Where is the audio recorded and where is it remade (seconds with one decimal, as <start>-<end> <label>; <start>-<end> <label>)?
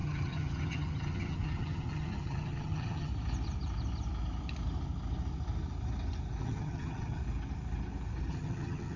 0.0-3.1 remade; 3.1-6.4 recorded; 6.4-7.2 remade; 7.2-8.3 recorded; 8.3-9.0 remade